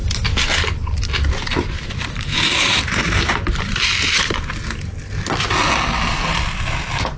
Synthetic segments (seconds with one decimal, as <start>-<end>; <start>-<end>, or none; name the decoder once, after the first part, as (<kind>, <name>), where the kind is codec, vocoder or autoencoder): 0.0-4.3 (vocoder, BigVGAN v2)